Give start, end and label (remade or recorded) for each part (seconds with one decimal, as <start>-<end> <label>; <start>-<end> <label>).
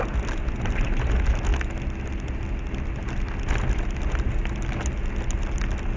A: 0.0-6.0 recorded